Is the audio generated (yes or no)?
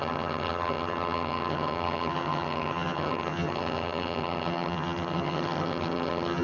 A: yes